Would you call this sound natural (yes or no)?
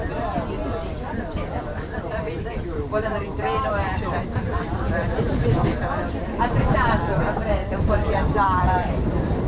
no